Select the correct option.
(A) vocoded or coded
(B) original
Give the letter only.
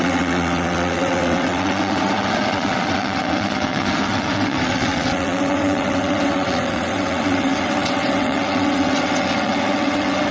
A